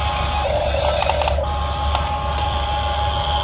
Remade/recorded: recorded